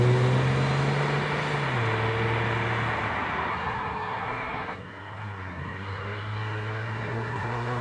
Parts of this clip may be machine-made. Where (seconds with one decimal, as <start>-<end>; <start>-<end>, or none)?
3.5-7.8